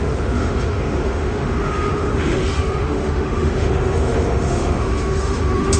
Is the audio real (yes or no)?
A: no